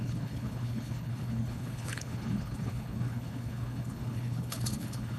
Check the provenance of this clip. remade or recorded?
remade